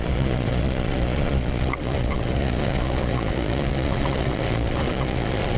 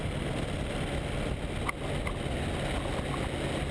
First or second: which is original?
second